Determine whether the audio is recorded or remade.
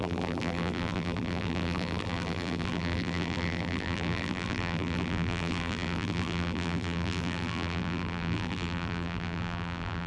remade